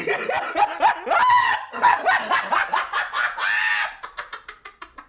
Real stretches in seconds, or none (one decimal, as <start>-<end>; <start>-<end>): 0.0-1.4; 2.0-5.1